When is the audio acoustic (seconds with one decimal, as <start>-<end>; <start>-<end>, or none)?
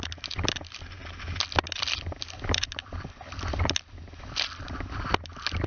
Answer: 0.0-5.7